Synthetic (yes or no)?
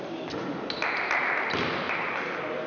no